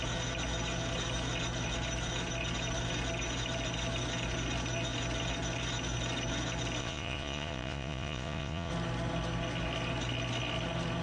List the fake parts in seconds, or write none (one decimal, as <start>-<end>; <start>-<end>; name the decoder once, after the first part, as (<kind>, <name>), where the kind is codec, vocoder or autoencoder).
6.8-8.7 (vocoder, Vocos)